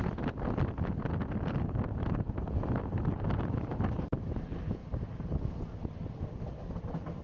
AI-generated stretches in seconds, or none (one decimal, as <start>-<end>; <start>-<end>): none